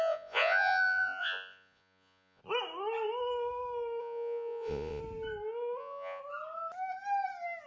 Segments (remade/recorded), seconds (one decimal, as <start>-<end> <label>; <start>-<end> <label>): 0.0-2.4 remade; 2.4-4.0 recorded; 4.0-5.0 remade; 5.0-5.8 recorded; 5.8-6.2 remade; 6.2-7.7 recorded